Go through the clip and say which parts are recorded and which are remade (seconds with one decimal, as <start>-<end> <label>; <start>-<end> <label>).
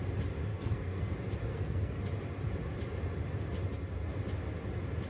0.0-0.5 recorded; 0.5-1.1 remade; 1.1-1.5 recorded; 1.5-2.0 remade; 2.0-5.1 recorded